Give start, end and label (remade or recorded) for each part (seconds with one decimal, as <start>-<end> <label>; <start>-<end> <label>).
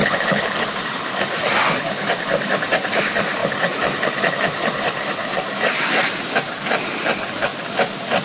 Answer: 0.0-0.8 remade; 0.8-8.2 recorded